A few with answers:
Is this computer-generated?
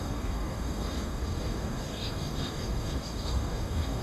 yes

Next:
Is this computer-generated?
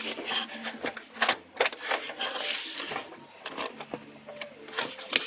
no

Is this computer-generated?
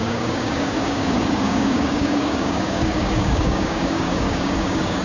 yes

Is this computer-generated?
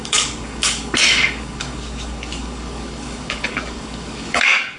yes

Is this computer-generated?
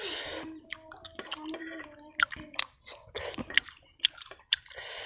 no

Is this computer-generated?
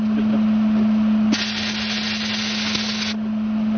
no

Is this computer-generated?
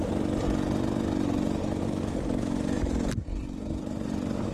no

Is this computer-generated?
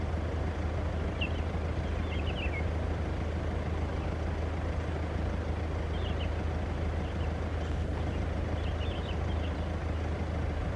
no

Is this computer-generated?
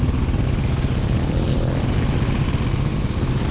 no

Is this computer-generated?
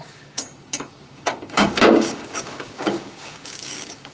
yes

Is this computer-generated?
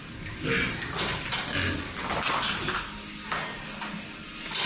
no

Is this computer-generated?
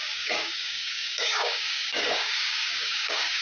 yes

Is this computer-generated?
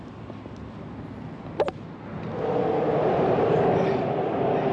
no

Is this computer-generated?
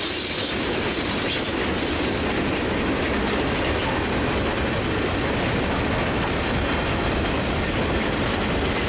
no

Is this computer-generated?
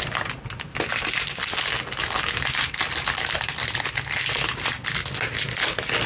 no